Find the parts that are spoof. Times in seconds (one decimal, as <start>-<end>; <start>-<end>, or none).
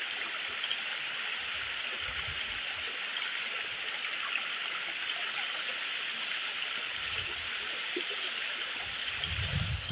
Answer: 6.9-9.5